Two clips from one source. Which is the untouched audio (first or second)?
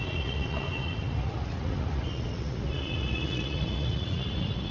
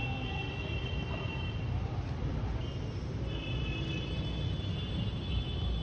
second